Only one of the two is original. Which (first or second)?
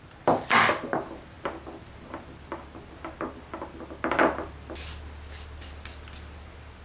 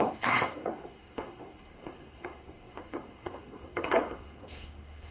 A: first